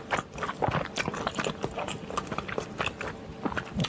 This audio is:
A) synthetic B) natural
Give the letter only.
B